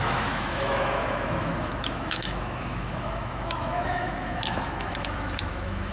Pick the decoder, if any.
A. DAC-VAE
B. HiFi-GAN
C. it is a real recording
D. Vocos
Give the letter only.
A